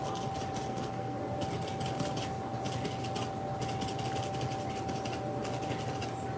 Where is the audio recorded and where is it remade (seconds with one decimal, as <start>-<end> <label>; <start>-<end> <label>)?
0.0-0.7 recorded; 0.7-1.2 remade; 1.2-6.4 recorded